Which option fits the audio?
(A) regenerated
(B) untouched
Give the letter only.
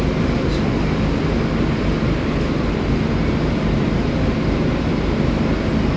B